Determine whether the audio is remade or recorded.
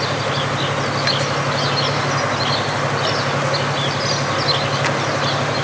recorded